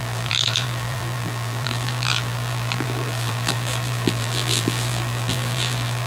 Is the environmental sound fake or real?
fake